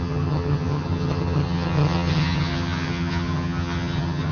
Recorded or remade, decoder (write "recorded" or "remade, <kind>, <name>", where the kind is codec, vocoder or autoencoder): remade, vocoder, HiFi-GAN